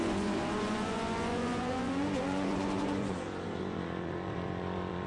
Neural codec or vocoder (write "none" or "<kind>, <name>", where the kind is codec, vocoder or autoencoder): vocoder, Vocos